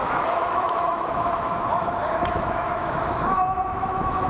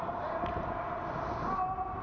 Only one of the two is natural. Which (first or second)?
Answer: second